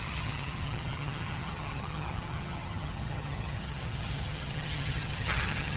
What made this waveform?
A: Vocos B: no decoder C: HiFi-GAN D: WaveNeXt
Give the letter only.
C